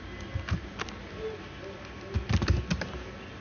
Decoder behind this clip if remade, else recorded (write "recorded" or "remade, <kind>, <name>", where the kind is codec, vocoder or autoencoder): recorded